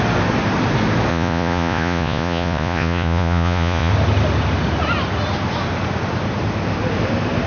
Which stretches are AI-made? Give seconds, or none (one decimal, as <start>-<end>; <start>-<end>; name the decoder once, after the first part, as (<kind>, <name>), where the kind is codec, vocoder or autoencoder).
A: 1.1-3.9 (vocoder, Vocos)